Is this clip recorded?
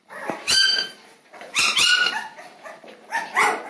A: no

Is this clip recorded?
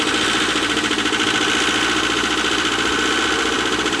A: no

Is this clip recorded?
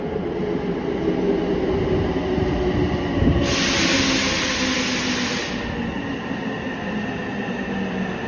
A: yes